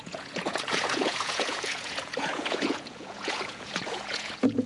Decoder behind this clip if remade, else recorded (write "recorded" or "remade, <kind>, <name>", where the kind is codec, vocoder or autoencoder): remade, vocoder, Vocos